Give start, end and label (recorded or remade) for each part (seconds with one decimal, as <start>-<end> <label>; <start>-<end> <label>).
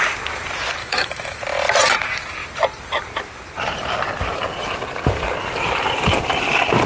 0.0-0.8 recorded; 0.8-1.4 remade; 1.4-6.9 recorded